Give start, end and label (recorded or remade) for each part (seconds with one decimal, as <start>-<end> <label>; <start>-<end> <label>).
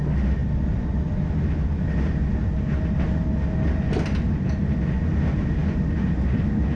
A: 0.0-6.8 recorded